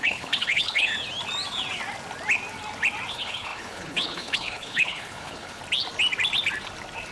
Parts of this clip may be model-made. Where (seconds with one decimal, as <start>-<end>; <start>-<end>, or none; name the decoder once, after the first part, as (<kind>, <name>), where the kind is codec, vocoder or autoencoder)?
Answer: 0.0-0.9 (codec, HILCodec); 3.1-5.6